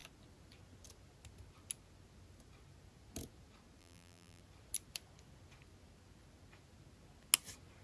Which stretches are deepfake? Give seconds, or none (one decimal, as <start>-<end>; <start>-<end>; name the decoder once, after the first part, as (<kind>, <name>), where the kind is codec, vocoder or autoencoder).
3.8-4.4 (vocoder, BigVGAN v2)